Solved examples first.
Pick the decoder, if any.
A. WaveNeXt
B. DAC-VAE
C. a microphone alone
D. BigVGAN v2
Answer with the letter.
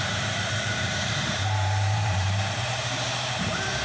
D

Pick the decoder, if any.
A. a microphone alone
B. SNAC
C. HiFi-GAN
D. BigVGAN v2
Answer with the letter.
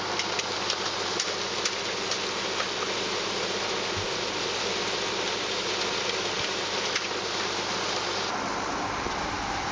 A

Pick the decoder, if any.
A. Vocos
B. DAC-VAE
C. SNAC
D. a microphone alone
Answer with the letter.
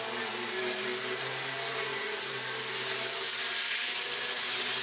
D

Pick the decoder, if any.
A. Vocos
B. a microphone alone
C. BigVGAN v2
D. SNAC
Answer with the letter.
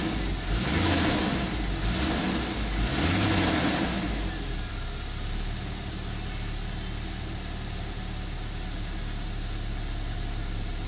B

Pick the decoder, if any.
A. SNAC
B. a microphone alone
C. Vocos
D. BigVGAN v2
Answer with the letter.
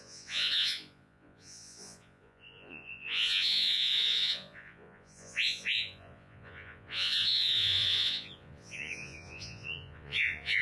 C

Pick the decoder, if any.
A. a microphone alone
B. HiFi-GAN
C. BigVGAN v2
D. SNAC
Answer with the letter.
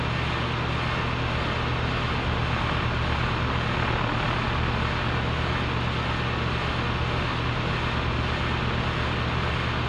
A